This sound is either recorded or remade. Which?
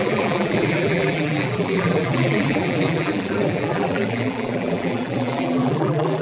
remade